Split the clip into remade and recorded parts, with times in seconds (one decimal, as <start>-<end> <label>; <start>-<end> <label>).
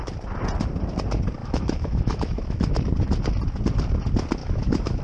0.0-1.4 recorded; 1.4-2.8 remade; 2.8-4.4 recorded; 4.4-5.0 remade